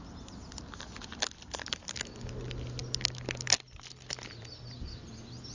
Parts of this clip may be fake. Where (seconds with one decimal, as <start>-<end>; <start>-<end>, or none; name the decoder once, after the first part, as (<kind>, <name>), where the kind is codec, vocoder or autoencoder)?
none